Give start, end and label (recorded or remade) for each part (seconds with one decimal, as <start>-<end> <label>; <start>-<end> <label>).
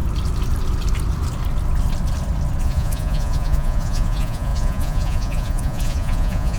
0.0-2.6 recorded; 2.6-6.6 remade